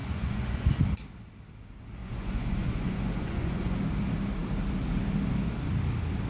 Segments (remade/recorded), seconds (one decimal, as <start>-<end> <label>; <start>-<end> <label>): 0.0-0.8 remade; 0.8-2.0 recorded; 2.0-3.8 remade; 3.8-6.3 recorded